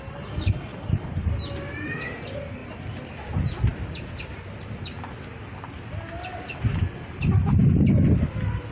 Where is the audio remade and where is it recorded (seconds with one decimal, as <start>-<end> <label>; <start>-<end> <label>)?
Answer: 0.0-0.7 recorded; 0.7-1.3 remade; 1.3-8.7 recorded